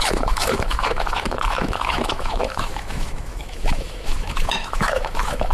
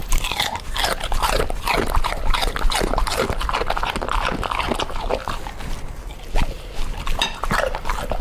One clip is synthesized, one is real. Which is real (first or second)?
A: second